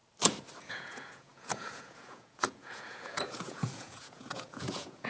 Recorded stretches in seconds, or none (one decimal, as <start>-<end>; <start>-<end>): 0.0-0.6